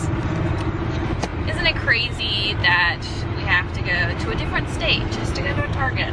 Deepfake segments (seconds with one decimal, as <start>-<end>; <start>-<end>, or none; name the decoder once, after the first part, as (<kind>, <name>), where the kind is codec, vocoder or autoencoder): 5.2-6.1 (codec, DAC)